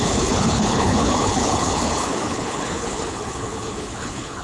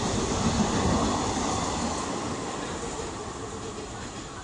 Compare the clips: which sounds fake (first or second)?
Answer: first